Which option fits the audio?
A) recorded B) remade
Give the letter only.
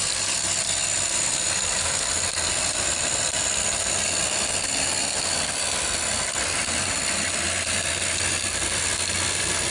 A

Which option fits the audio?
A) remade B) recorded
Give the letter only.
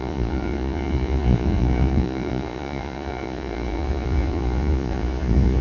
A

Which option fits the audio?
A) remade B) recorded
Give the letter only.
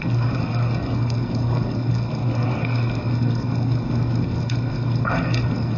A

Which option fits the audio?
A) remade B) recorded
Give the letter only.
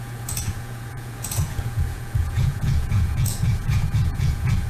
A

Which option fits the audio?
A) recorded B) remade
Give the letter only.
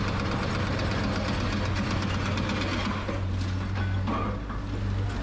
A